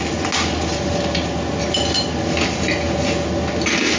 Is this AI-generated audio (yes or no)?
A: no